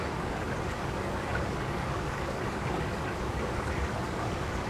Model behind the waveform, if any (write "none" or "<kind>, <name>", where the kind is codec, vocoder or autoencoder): codec, DAC